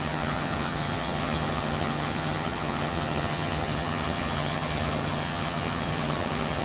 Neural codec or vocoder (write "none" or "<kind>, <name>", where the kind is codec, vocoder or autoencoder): vocoder, HiFi-GAN